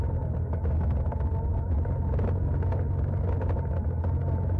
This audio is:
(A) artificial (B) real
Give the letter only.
B